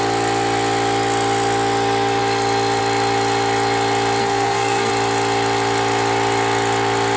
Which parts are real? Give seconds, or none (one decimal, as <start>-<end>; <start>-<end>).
0.0-4.2; 4.9-7.2